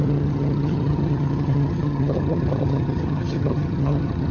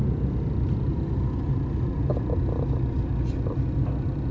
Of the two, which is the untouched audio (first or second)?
second